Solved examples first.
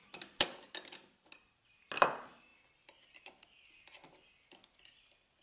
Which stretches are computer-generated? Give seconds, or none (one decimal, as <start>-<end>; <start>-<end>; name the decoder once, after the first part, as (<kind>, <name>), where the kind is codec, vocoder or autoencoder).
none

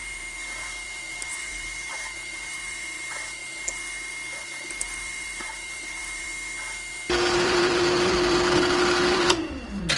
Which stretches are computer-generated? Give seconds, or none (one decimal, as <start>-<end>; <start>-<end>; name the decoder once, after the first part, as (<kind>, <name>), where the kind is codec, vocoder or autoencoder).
0.0-3.4 (vocoder, BigVGAN v2); 4.4-6.3; 7.2-10.0

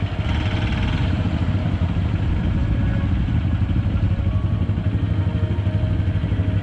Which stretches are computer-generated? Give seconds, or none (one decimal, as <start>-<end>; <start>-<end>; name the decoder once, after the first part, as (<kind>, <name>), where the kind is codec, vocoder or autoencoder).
1.0-4.2 (vocoder, BigVGAN v2)